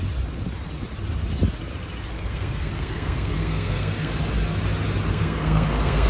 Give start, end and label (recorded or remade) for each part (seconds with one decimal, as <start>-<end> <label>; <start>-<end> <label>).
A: 0.0-2.1 recorded; 2.1-4.1 remade; 4.1-5.1 recorded; 5.1-6.1 remade